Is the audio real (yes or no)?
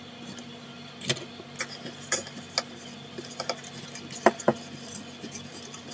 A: yes